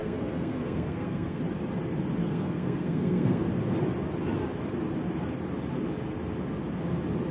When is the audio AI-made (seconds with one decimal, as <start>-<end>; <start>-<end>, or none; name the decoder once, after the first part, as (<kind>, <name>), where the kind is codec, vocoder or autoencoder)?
0.0-1.4 (codec, SNAC); 2.2-3.5